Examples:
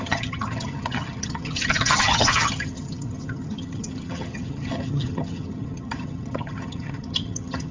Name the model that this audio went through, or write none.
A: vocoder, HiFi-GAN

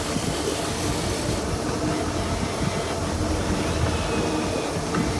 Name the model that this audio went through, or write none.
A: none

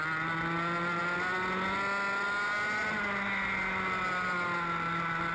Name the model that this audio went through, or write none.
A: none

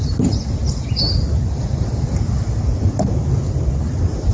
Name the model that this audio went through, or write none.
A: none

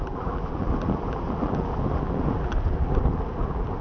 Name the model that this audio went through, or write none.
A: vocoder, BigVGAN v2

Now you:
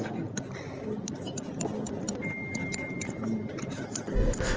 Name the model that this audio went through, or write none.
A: none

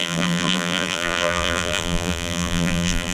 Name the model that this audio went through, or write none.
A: vocoder, BigVGAN v2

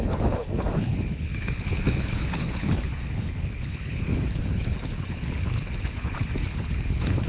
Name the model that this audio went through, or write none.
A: codec, HILCodec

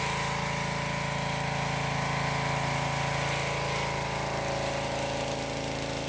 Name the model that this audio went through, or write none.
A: none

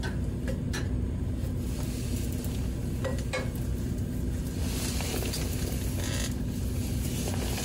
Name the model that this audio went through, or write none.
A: none